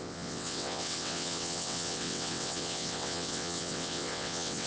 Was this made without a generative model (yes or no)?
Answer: no